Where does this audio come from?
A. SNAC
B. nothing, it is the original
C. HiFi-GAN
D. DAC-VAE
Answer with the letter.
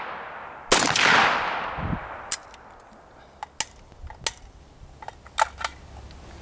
B